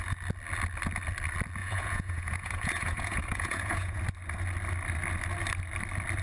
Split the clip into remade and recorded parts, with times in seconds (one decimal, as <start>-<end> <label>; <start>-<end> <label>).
0.0-1.6 recorded; 1.6-4.0 remade; 4.0-6.2 recorded